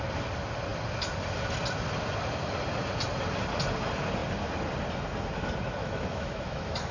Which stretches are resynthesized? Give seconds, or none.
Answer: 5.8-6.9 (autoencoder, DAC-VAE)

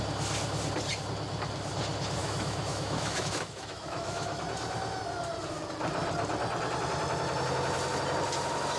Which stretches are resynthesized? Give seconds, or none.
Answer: 2.2-4.4 (autoencoder, DAC-VAE)

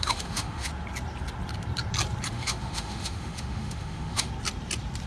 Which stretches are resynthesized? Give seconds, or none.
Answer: 0.0-0.7 (autoencoder, DAC-VAE); 2.3-4.3

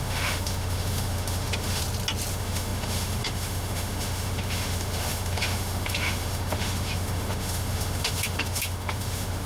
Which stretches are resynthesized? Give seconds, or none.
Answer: 0.0-1.8 (autoencoder, DAC-VAE); 2.3-9.5

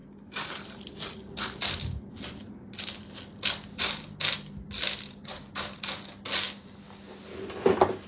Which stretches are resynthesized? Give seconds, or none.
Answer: none

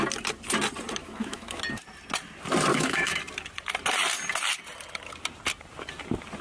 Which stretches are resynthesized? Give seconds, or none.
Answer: 1.0-1.6 (autoencoder, DAC-VAE); 2.7-3.2

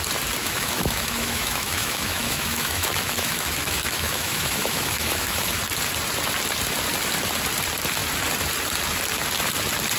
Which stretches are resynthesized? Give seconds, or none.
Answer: 0.4-5.6 (autoencoder, DAC-VAE)